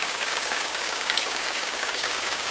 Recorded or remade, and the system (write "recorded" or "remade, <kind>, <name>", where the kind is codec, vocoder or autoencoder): remade, codec, DAC